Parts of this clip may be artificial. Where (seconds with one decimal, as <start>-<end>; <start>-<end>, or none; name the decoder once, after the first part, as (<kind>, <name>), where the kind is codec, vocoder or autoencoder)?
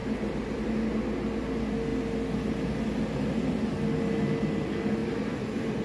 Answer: 5.0-5.8 (vocoder, BigVGAN v2)